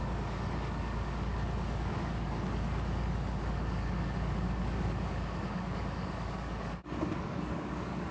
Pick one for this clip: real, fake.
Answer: fake